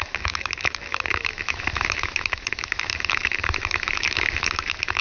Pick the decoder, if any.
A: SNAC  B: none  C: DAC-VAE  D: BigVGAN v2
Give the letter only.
C